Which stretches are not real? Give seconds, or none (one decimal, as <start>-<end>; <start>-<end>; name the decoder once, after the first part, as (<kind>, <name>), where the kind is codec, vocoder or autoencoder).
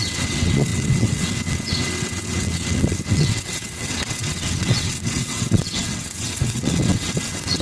0.0-7.6 (vocoder, WaveNeXt)